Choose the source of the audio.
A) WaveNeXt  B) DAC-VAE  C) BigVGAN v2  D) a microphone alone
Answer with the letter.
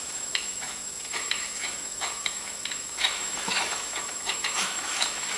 B